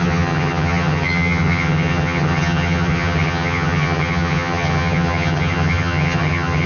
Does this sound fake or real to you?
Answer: fake